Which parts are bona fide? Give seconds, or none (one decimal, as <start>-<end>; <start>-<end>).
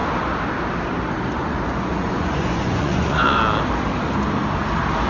0.0-1.4; 3.4-5.1